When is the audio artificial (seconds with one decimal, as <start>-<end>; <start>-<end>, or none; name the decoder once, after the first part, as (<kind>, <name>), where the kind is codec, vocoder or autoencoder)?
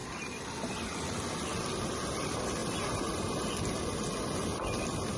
0.0-1.2 (vocoder, BigVGAN v2)